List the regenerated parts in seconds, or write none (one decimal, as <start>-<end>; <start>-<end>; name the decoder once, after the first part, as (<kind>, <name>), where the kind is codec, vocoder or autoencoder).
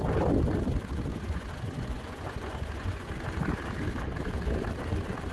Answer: 1.1-3.1 (vocoder, Vocos)